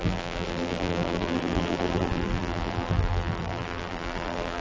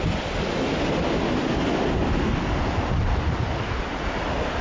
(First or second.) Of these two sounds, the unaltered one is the second